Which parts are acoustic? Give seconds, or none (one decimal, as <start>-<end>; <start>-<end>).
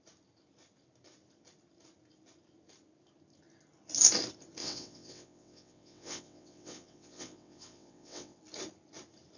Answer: 0.0-4.6; 8.4-9.4